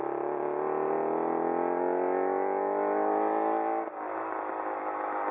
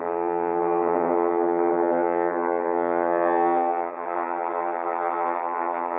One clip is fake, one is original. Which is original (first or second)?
first